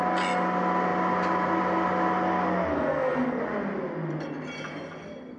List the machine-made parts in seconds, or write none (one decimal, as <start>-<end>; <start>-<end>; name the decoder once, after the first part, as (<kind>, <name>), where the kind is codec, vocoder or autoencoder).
2.7-3.4 (codec, SNAC)

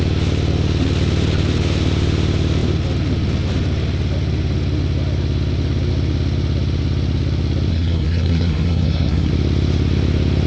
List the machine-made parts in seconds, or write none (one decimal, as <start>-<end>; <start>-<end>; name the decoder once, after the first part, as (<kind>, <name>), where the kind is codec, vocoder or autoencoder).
7.7-9.3 (codec, SNAC)

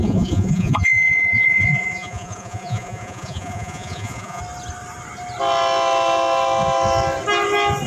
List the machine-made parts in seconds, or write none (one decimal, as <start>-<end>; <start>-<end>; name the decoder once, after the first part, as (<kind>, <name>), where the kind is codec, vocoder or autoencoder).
0.0-4.4 (vocoder, Vocos)

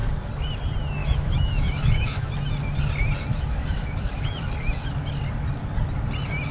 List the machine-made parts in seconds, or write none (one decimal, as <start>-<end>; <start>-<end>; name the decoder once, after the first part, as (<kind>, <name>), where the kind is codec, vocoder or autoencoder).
1.0-2.3 (autoencoder, DAC-VAE); 3.3-4.4

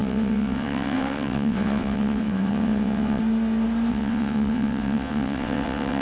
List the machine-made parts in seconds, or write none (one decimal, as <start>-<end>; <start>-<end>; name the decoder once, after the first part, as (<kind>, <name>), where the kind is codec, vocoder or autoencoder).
0.0-3.2 (vocoder, WaveNeXt); 3.9-6.0

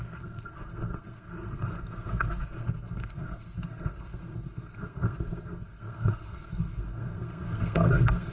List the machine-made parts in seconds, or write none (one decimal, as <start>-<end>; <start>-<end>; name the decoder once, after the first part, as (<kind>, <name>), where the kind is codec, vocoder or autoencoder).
0.0-8.3 (codec, SNAC)